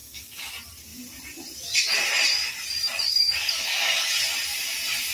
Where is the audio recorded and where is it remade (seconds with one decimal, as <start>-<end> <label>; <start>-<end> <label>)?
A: 0.0-0.5 remade; 0.5-3.1 recorded; 3.1-4.1 remade; 4.1-5.1 recorded